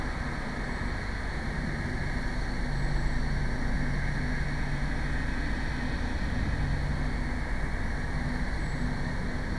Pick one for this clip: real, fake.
real